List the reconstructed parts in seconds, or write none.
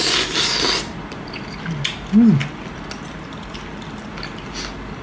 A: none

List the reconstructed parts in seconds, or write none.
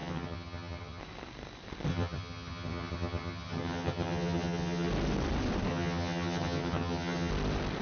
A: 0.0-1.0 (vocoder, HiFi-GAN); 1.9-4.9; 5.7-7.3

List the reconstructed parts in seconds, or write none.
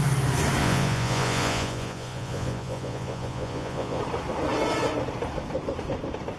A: 0.6-4.0 (vocoder, Vocos)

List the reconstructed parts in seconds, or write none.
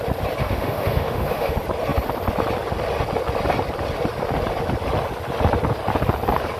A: 0.4-1.5 (autoencoder, DAC-VAE)